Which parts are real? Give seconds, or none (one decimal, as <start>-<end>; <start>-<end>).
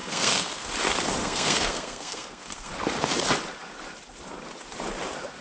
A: 0.7-1.2; 2.7-5.4